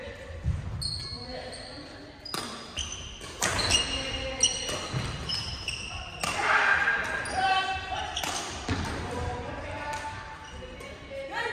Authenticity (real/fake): real